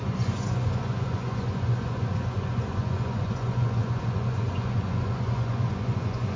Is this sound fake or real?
fake